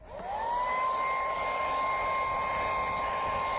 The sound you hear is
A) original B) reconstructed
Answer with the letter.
A